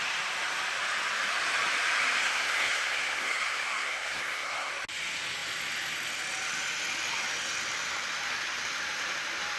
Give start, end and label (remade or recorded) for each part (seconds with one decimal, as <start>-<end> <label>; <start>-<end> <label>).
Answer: 0.0-2.2 recorded; 2.2-4.7 remade; 4.7-9.6 recorded